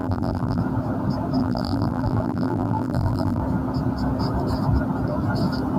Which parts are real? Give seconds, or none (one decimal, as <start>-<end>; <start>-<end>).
0.6-1.4; 3.4-5.8